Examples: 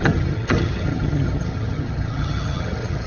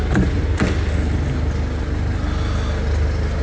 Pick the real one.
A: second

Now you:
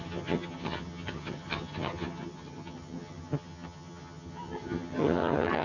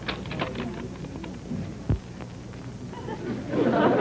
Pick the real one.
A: second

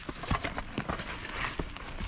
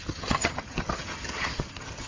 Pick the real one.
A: first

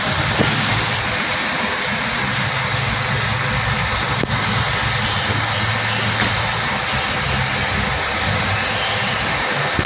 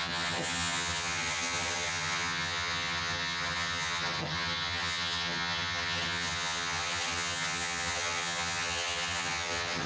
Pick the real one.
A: first